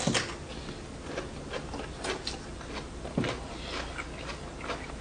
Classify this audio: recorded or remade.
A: recorded